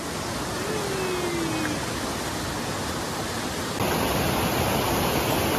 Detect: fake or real real